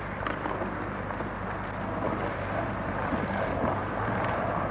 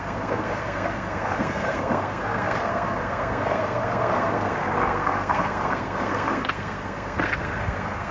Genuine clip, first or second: first